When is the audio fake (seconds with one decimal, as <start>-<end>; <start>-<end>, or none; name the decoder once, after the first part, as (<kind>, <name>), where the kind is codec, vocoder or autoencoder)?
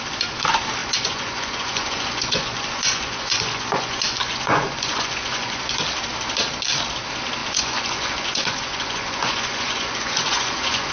0.8-5.6 (vocoder, Vocos); 7.4-10.9